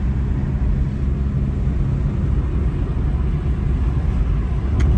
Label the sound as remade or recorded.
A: recorded